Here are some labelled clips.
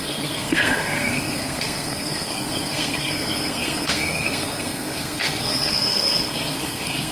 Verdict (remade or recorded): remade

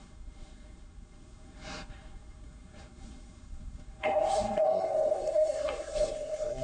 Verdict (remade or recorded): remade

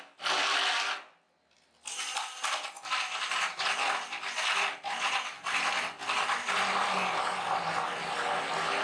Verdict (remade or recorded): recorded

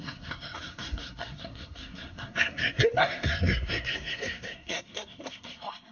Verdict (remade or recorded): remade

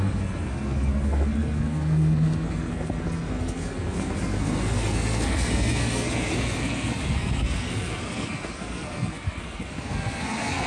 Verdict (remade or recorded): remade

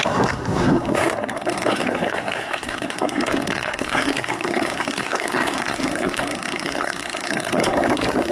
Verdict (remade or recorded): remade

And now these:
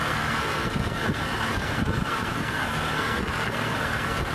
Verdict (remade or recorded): remade